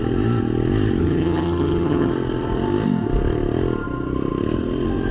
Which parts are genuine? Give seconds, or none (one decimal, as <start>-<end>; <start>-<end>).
0.0-1.0; 2.1-5.1